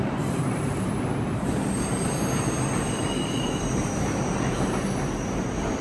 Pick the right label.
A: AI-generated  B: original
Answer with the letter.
A